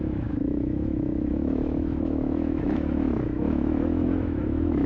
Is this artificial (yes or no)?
yes